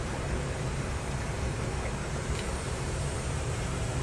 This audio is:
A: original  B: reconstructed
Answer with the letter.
B